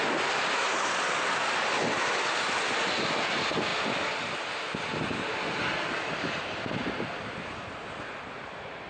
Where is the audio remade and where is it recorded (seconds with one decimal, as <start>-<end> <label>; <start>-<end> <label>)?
0.0-8.9 recorded